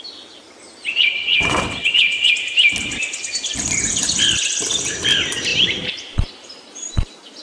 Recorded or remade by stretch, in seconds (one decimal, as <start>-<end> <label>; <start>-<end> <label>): 0.0-0.9 recorded; 0.9-2.3 remade; 2.3-7.4 recorded